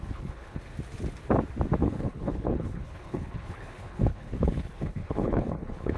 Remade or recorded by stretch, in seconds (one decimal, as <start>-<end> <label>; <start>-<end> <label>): 0.0-0.6 remade; 0.6-1.8 recorded; 1.8-6.0 remade